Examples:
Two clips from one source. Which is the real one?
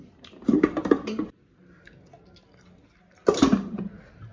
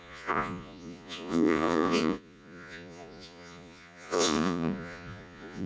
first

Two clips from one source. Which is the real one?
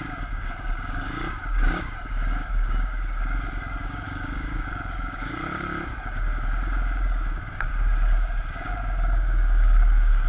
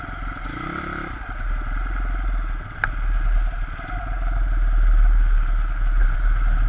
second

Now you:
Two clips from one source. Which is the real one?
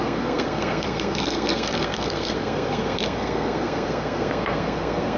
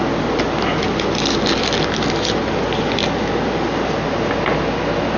second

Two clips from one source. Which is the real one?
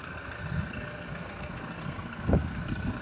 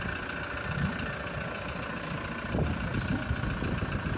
second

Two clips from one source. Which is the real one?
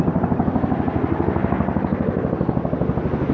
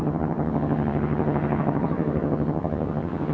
first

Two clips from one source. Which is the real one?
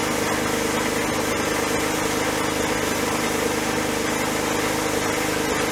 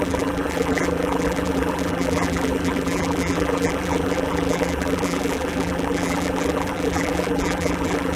first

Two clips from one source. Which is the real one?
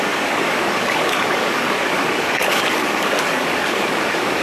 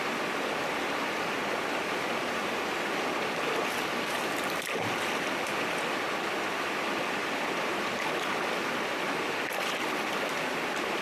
second